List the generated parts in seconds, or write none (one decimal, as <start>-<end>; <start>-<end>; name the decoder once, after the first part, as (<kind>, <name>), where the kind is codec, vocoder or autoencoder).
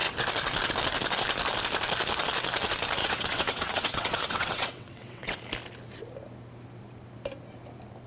3.0-5.4 (vocoder, WaveNeXt)